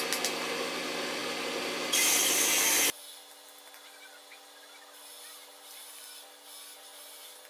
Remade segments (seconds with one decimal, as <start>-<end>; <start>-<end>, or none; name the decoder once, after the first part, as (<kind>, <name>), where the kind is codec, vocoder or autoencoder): none